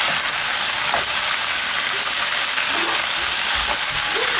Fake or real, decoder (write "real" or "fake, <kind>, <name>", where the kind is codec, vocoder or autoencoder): real